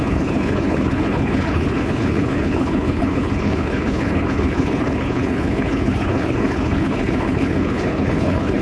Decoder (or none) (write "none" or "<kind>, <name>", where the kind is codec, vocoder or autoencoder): codec, HILCodec